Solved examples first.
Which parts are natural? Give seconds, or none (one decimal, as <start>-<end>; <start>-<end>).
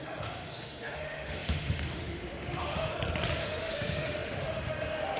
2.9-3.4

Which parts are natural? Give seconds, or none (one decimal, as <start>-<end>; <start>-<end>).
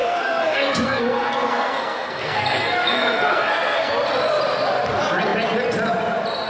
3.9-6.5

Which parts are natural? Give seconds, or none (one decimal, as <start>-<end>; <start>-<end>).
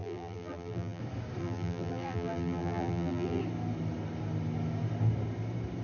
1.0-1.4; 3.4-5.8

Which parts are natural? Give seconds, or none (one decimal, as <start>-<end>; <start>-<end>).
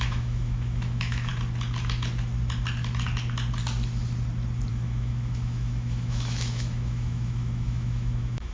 1.3-4.7